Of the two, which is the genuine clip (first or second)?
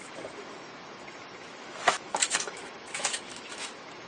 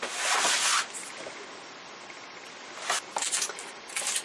second